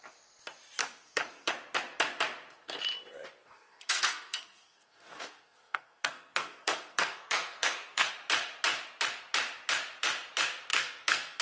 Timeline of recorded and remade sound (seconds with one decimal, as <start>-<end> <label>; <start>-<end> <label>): 0.0-0.8 recorded; 0.8-1.5 remade; 1.5-3.4 recorded; 3.4-8.1 remade; 8.1-10.7 recorded; 10.7-11.4 remade